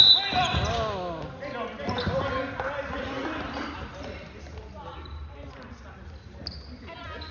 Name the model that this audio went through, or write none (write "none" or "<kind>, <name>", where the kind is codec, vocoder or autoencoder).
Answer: none